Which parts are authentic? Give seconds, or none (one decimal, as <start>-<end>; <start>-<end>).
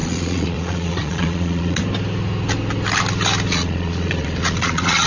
1.8-3.5